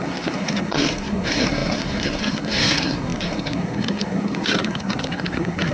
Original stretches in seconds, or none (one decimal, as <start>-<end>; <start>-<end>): none